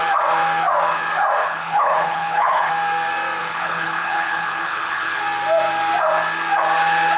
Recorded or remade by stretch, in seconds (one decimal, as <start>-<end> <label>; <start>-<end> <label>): 0.0-1.4 recorded; 1.4-2.7 remade; 2.7-3.4 recorded; 3.4-5.2 remade; 5.2-7.2 recorded